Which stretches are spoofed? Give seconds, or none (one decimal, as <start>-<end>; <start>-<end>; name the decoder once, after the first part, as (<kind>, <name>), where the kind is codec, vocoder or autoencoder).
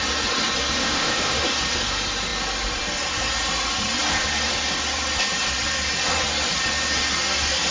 0.8-1.4 (autoencoder, DAC-VAE)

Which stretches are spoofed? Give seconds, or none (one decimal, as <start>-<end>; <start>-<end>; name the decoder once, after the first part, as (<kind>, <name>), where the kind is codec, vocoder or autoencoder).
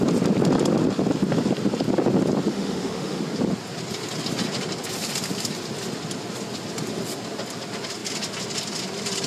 2.5-3.2 (autoencoder, DAC-VAE)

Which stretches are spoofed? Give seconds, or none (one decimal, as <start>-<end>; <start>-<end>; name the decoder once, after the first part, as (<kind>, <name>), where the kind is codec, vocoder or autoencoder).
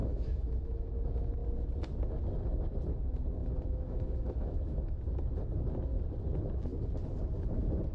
0.0-0.9 (autoencoder, DAC-VAE); 3.4-5.0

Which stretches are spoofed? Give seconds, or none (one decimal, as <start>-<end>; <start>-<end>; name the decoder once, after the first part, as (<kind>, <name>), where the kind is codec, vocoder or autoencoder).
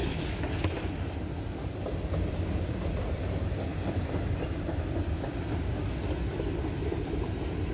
none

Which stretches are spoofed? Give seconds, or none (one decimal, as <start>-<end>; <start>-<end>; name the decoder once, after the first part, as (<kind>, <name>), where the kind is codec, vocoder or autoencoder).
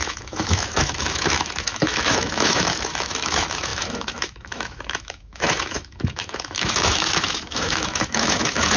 0.0-8.8 (autoencoder, DAC-VAE)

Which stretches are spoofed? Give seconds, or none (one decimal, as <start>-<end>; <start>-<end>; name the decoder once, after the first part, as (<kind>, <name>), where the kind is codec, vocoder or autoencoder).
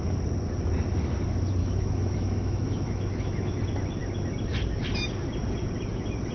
1.6-3.6 (autoencoder, DAC-VAE)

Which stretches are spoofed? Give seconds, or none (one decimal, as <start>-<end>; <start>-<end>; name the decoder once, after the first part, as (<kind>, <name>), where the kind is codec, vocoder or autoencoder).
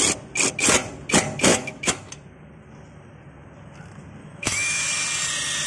1.5-2.1 (autoencoder, DAC-VAE); 4.2-4.9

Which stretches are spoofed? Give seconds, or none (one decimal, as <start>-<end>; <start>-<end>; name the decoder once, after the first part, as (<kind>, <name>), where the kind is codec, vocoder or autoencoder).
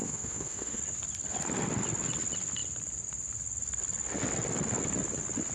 0.0-0.8 (autoencoder, DAC-VAE)